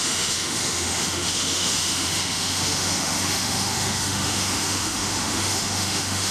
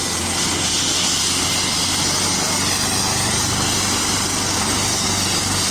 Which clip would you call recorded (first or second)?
second